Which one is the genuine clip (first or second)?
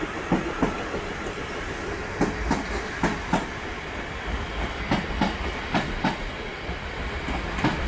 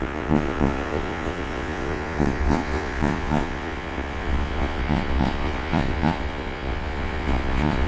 first